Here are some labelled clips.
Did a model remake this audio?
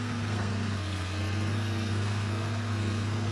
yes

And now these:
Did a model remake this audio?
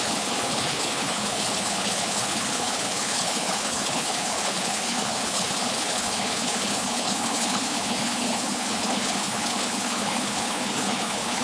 yes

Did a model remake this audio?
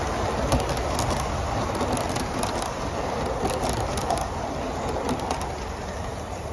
no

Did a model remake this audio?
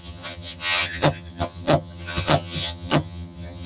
yes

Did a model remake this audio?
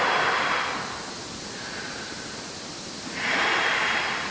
no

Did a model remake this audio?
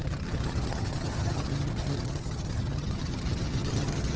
yes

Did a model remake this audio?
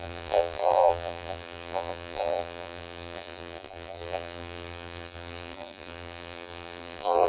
yes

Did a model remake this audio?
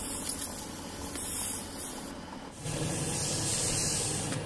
no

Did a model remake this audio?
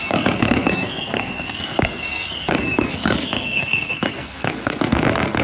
yes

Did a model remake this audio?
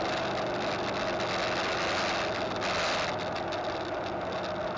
no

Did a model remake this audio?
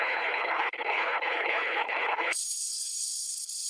yes